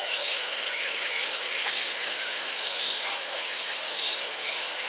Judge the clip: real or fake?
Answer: fake